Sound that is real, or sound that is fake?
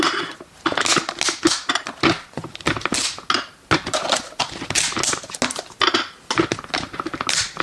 real